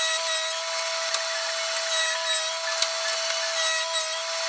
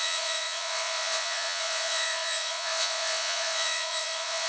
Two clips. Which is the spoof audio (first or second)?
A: second